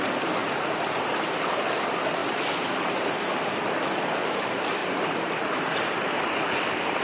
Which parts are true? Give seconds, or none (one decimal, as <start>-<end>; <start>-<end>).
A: 0.0-0.4; 1.2-2.2; 3.3-4.8